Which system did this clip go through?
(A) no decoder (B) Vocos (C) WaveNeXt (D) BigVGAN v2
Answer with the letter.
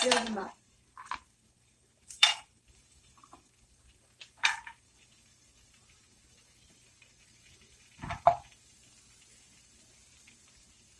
D